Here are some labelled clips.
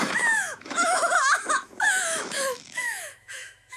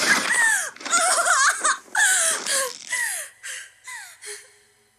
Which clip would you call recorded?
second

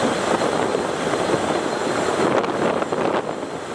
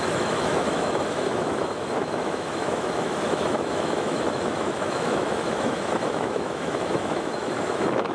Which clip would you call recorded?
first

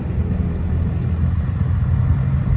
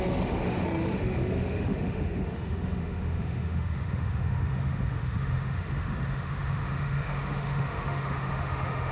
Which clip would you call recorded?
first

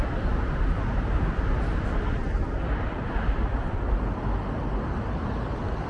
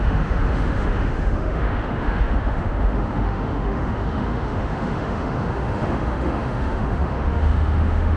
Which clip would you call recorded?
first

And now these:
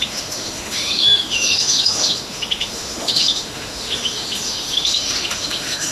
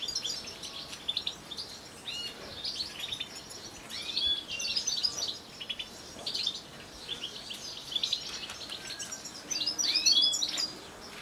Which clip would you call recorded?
second